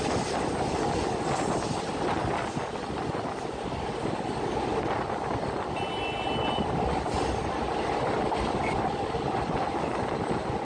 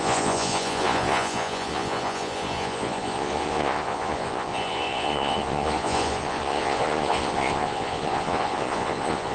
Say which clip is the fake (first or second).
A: second